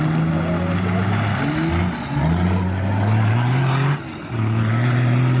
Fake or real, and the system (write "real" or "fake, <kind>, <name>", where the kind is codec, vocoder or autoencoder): real